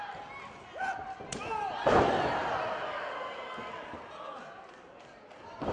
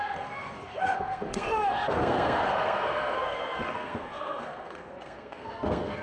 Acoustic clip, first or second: first